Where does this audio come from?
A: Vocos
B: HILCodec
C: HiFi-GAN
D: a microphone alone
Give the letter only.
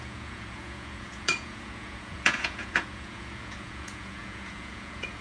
A